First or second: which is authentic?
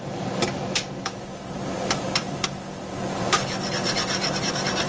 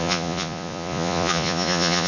first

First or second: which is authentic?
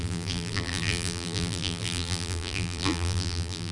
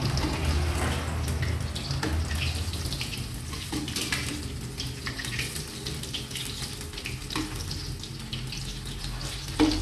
second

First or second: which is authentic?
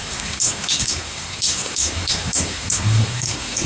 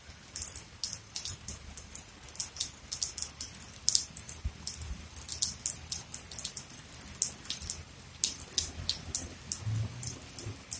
second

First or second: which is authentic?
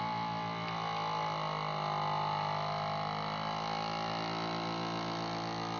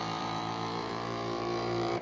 first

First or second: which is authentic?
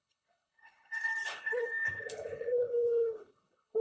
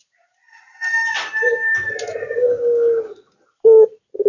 second